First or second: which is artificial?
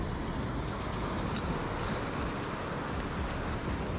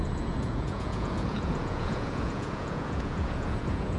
second